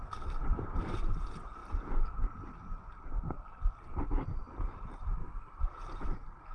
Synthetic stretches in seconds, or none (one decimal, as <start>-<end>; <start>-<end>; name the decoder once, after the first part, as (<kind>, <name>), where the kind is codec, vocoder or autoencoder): 0.0-1.6 (vocoder, BigVGAN v2); 2.8-5.2; 5.8-6.5